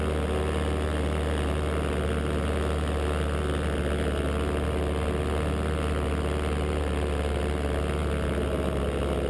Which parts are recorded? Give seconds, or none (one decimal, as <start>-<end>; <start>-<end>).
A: 0.0-9.3